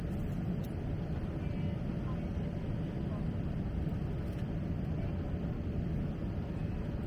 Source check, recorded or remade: recorded